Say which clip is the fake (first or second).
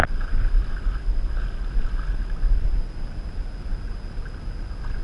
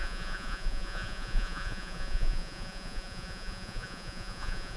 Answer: second